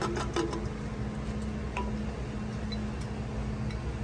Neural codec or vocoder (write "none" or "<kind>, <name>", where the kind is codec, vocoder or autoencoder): none